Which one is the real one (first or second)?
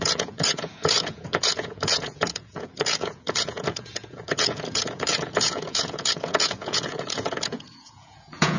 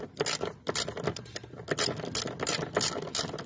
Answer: second